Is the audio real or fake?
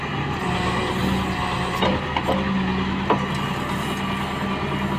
real